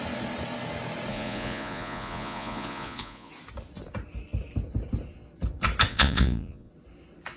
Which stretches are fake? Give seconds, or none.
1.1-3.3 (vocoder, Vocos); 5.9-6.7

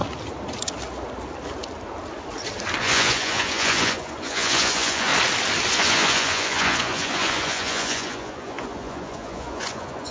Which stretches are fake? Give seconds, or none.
2.8-5.1 (vocoder, Vocos); 5.7-10.1

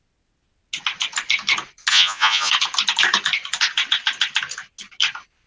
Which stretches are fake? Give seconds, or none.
1.9-2.5 (vocoder, Vocos)

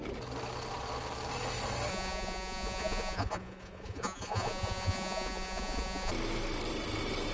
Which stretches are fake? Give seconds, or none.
1.9-6.1 (vocoder, Vocos)

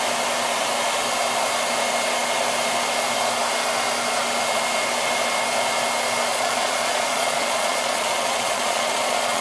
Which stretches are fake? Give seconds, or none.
6.3-9.4 (vocoder, Vocos)